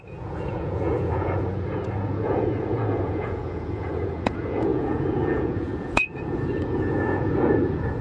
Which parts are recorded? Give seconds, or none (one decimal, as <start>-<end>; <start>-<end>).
none